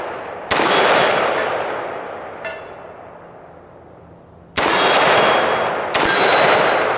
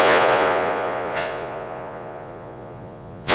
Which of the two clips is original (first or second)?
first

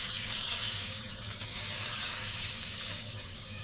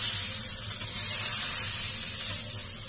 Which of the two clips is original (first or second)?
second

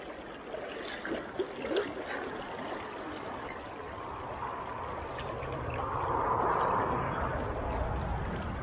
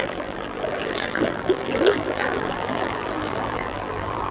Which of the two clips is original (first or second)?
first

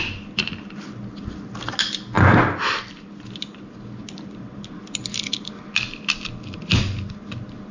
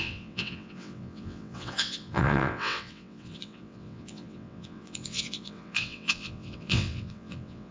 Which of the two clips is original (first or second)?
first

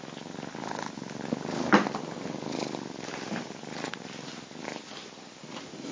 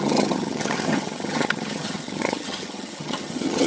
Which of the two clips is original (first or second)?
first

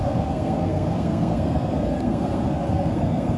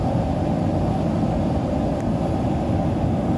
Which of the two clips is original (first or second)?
second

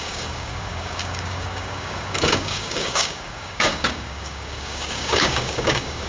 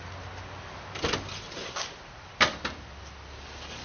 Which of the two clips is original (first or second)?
second